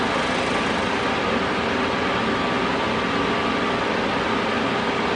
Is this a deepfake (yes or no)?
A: no